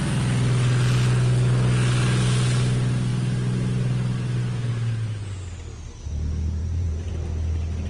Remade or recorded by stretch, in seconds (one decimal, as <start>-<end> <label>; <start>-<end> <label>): 0.0-6.6 recorded; 6.6-7.1 remade; 7.1-7.9 recorded